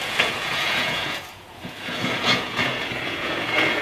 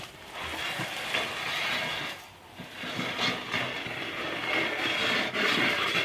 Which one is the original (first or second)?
second